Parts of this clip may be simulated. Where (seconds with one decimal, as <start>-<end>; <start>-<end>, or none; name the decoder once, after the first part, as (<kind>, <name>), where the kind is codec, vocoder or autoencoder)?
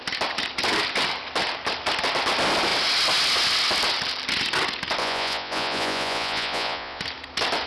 5.0-7.0 (vocoder, Vocos)